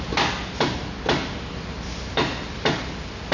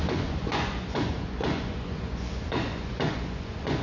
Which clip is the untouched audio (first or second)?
first